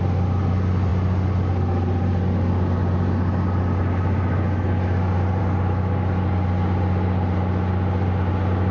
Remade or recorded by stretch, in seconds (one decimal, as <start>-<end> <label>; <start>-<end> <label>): 0.0-8.7 recorded